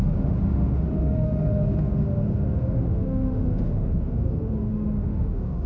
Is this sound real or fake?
fake